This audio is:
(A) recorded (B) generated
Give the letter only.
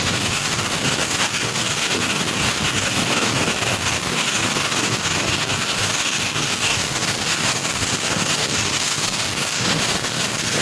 B